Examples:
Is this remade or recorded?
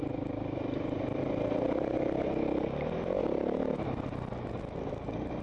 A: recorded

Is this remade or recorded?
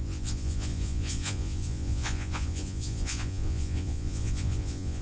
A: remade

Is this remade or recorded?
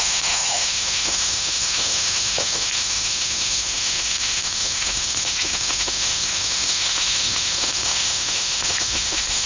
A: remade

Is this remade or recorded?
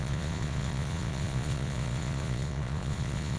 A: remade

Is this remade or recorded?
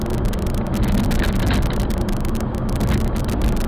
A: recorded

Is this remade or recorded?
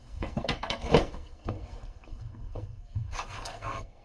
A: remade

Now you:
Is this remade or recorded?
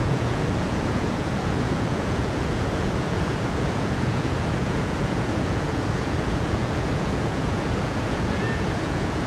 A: remade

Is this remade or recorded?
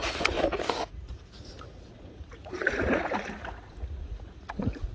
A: remade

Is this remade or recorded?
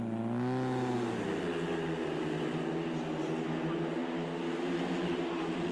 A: recorded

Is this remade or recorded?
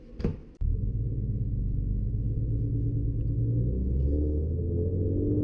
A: recorded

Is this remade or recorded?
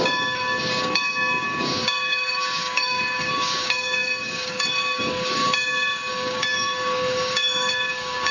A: remade